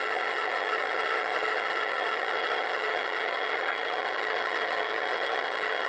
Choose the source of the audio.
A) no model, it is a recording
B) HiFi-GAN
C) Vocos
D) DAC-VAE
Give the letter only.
B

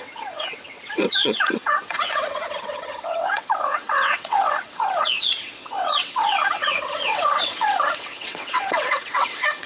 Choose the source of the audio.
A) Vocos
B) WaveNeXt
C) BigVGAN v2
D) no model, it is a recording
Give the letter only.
B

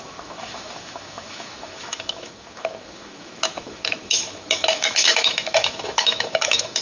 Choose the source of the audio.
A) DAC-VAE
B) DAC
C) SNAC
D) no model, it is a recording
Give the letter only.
A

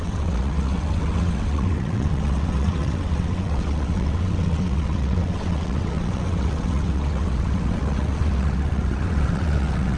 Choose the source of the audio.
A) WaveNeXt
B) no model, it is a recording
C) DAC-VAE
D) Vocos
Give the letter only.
A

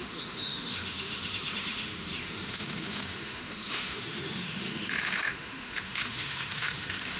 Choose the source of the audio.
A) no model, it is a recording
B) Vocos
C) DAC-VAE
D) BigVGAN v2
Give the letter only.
C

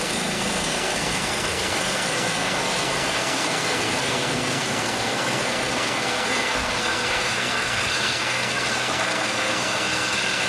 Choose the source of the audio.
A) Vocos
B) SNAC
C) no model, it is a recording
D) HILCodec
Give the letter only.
B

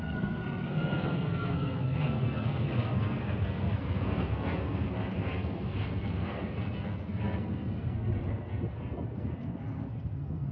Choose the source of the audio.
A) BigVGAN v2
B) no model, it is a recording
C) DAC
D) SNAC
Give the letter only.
D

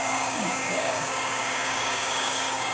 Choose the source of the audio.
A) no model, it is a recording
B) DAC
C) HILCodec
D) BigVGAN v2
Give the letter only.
B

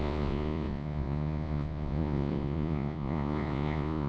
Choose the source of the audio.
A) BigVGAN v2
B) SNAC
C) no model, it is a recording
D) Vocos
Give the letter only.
D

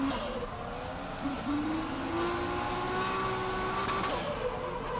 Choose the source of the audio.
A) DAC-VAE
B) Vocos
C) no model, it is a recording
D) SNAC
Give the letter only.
C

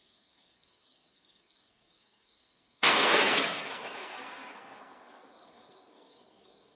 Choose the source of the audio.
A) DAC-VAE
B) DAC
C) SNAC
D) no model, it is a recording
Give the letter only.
C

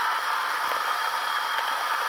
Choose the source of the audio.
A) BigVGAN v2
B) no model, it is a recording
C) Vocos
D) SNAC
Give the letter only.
A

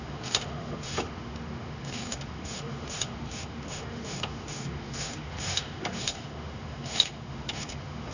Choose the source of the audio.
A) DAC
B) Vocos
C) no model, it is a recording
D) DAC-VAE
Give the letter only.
D